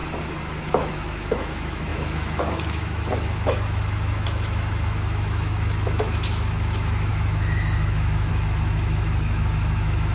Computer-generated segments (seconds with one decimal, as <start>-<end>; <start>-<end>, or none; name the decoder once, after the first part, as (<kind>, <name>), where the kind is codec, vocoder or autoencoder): 0.5-10.1 (autoencoder, DAC-VAE)